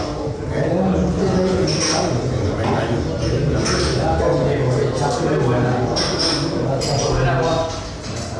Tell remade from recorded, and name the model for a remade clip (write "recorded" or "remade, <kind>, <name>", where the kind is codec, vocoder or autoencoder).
recorded